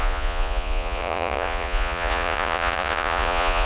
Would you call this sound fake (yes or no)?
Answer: yes